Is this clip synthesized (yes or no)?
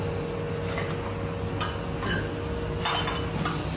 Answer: no